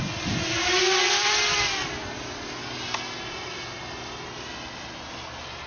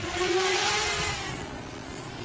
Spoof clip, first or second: second